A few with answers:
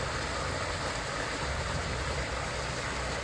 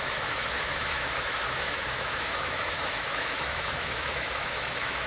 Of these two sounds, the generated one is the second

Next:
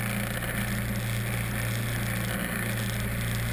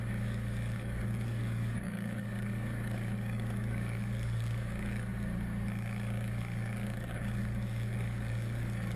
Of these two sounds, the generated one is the second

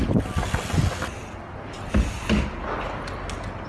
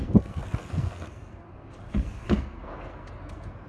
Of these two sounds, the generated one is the second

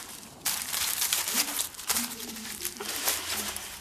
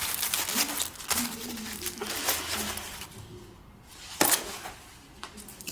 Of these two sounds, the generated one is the first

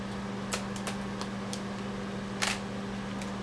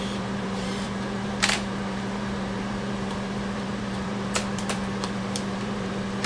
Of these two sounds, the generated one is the second